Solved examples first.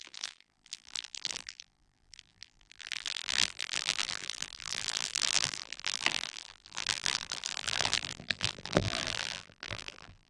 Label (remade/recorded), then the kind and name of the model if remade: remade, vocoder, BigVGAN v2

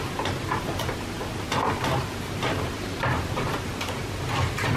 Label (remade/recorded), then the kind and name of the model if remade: remade, vocoder, BigVGAN v2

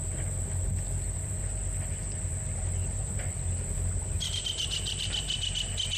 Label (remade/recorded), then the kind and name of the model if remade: recorded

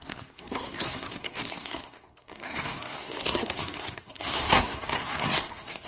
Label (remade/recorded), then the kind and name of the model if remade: remade, codec, SNAC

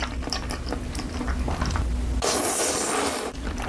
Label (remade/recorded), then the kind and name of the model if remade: recorded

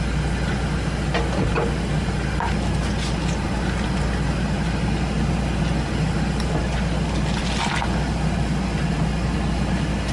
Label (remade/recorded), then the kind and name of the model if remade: recorded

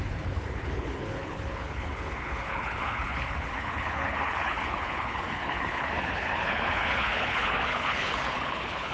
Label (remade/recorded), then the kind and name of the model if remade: remade, codec, HILCodec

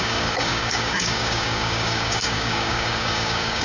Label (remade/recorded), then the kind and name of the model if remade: remade, codec, DAC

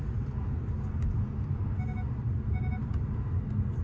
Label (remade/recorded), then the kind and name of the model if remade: recorded